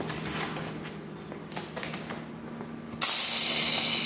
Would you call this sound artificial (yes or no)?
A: no